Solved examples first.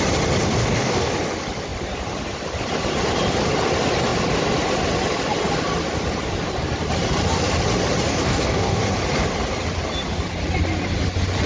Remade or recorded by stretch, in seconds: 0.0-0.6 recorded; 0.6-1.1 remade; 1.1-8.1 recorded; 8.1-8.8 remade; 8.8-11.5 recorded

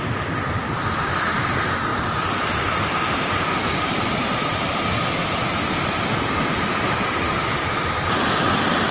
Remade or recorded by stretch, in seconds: 0.0-1.9 remade; 1.9-3.7 recorded; 3.7-7.4 remade; 7.4-8.0 recorded; 8.0-8.9 remade

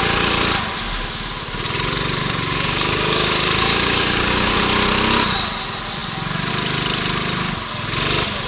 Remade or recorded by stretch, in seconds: 0.0-2.2 recorded; 2.2-4.6 remade; 4.6-8.5 recorded

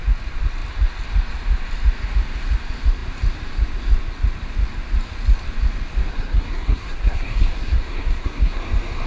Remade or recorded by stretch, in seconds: 0.0-6.1 recorded; 6.1-8.6 remade; 8.6-9.1 recorded

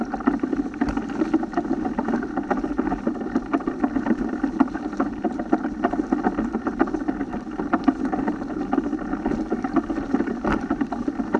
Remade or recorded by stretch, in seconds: 0.0-3.5 recorded; 3.5-4.0 remade; 4.0-11.4 recorded

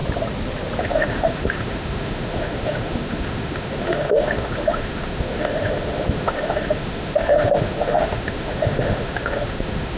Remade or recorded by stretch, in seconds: 0.0-0.8 recorded; 0.8-10.0 remade

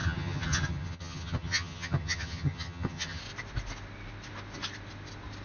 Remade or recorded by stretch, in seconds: 0.0-3.2 remade; 3.2-5.4 recorded

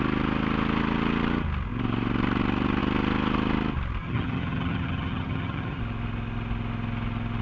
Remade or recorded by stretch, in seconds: 0.0-4.0 recorded; 4.0-5.8 remade; 5.8-7.4 recorded